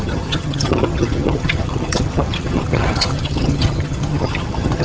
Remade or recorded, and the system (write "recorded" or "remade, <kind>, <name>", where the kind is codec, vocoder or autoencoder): remade, vocoder, HiFi-GAN